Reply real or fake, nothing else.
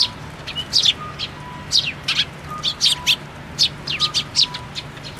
real